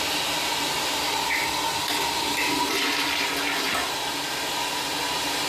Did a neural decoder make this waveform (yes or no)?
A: no